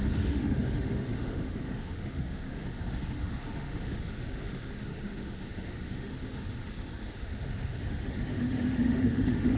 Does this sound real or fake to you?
fake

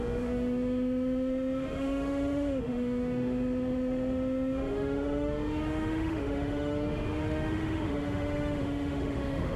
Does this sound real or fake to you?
fake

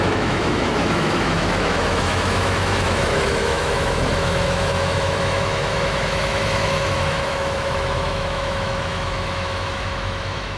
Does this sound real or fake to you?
fake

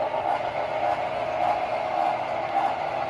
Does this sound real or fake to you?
real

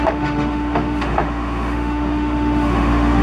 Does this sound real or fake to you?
fake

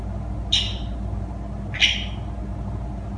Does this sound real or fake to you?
real